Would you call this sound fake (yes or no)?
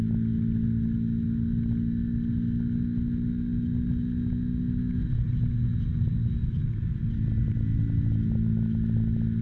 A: no